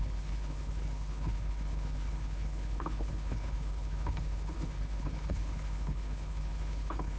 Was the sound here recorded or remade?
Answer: remade